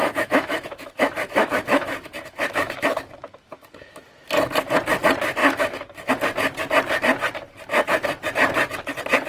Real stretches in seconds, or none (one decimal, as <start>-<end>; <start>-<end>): 4.1-5.4; 6.1-9.3